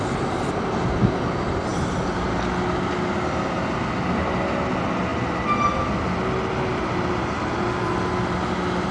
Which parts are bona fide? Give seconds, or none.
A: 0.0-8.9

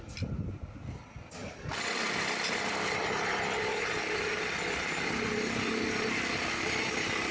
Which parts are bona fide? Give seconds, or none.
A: 0.0-7.3